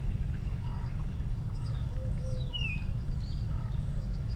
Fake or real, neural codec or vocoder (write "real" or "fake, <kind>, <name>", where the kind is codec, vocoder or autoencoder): fake, codec, DAC